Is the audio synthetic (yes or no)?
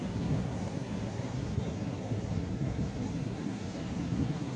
yes